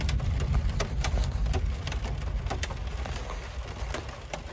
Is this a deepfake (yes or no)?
no